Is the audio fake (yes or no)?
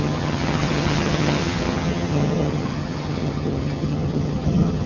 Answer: yes